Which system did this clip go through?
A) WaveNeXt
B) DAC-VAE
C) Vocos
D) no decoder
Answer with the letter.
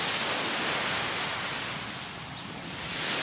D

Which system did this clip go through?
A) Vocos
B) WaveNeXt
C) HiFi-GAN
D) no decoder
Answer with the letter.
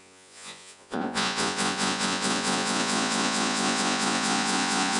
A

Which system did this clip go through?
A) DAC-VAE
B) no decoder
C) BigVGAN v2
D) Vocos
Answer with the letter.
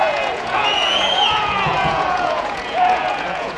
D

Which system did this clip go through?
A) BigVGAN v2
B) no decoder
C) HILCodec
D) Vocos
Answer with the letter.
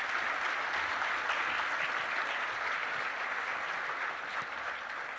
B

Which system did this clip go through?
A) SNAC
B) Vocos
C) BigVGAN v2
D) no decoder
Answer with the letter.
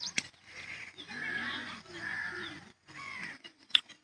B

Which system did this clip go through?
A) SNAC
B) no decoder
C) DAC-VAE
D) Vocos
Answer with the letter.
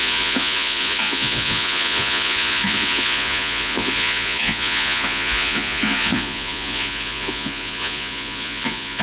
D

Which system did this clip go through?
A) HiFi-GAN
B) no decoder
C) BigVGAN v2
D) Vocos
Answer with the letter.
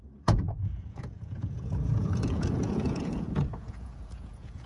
D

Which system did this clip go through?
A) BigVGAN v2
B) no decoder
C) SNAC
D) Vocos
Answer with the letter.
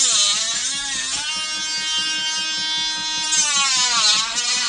B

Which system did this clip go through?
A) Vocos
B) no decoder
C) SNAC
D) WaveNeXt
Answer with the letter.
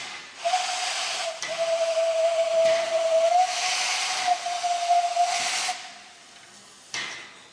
B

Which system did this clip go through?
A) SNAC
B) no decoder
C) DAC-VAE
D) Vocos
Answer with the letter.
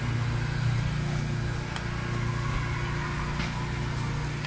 B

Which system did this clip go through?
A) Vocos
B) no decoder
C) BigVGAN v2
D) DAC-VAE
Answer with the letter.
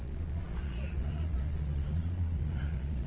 A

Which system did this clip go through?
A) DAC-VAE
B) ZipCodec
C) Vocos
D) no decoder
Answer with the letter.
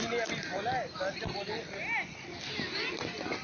D